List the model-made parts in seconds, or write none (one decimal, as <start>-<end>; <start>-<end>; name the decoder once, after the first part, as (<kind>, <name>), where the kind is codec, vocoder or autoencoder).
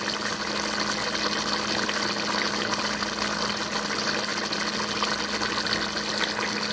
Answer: none